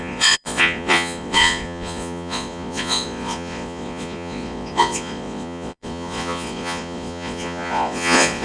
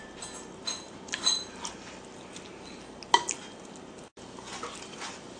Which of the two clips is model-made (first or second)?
first